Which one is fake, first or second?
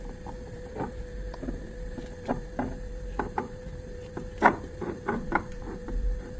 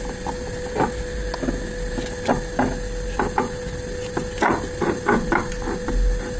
first